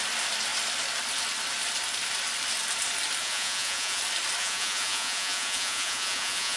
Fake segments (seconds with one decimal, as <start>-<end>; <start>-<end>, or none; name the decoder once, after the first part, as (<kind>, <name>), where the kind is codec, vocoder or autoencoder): 3.2-4.0 (vocoder, Vocos); 4.4-6.6